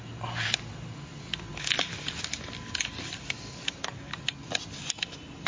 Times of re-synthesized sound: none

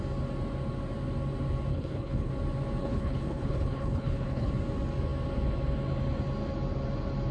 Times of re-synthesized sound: 1.7-2.3; 2.8-4.5

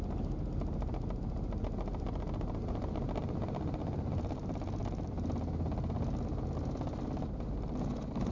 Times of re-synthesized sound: none

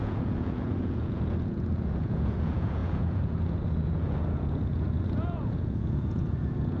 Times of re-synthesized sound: 0.0-6.8

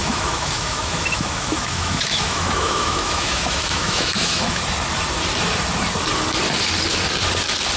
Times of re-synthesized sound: 0.0-4.6